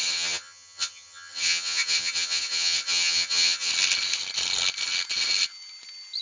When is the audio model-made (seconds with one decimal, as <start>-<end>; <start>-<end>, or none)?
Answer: 0.0-3.7